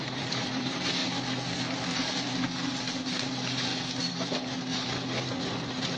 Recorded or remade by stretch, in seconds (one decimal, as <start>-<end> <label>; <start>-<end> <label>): 0.0-1.0 remade; 1.0-3.1 recorded; 3.1-3.7 remade; 3.7-6.0 recorded